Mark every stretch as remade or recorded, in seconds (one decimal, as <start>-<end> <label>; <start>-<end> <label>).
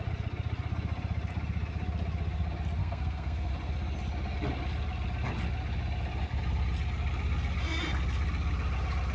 0.0-2.8 recorded; 2.8-3.5 remade; 3.5-9.1 recorded